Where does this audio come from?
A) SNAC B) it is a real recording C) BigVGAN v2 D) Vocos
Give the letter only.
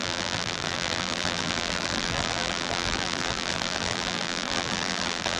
C